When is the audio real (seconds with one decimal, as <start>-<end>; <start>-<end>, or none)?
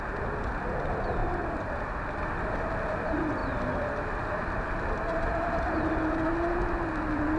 0.0-7.4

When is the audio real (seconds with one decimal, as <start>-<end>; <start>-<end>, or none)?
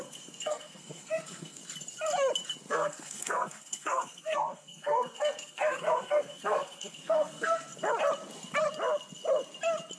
1.6-2.7; 7.7-10.0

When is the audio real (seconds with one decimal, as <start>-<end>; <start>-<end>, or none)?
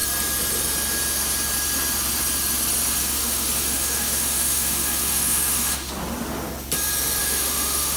0.0-3.0; 5.9-7.2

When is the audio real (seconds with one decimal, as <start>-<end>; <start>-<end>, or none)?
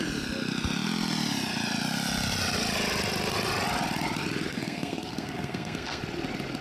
0.0-4.5; 6.0-6.6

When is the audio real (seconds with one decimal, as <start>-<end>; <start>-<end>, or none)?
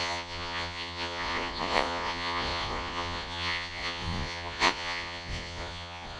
none